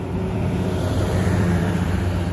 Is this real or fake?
fake